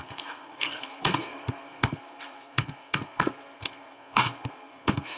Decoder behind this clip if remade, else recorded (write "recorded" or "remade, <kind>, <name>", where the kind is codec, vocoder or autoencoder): remade, codec, SNAC